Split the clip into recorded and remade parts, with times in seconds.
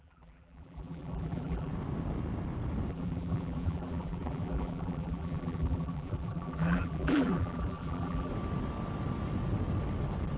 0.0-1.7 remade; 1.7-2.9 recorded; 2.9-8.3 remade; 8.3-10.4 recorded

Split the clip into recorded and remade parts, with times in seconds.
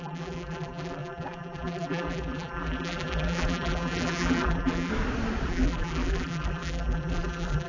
0.0-4.9 remade; 4.9-5.5 recorded; 5.5-7.7 remade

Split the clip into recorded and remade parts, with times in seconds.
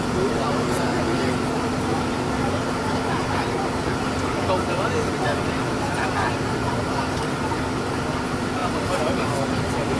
0.0-10.0 recorded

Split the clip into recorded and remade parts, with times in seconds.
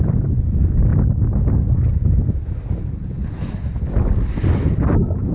0.0-5.3 recorded